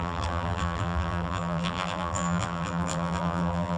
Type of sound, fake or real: fake